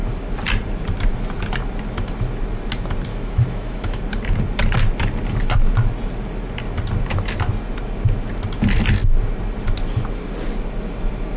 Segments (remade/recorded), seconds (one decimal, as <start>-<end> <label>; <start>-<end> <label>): 0.0-3.1 recorded; 3.1-4.0 remade; 4.0-11.4 recorded